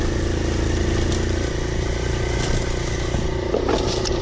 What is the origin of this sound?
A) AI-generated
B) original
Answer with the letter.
B